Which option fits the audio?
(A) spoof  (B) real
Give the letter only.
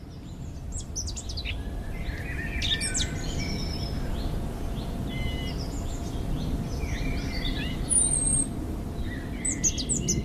B